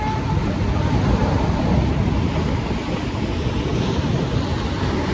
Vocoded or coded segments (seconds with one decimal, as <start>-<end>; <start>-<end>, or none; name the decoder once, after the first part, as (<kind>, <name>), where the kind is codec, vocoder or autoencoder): none